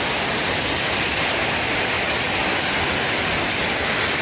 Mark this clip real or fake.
real